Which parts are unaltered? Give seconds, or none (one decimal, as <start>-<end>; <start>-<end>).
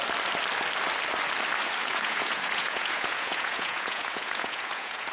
0.0-1.8